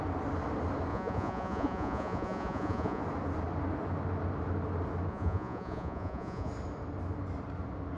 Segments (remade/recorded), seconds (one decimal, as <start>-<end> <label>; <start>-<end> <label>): 0.0-0.9 recorded; 0.9-3.0 remade; 3.0-5.1 recorded; 5.1-6.5 remade; 6.5-8.0 recorded